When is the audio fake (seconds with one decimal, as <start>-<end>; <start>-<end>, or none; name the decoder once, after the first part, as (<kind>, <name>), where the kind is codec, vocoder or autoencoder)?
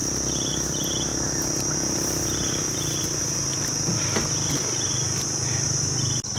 none